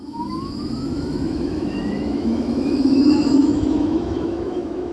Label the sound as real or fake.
fake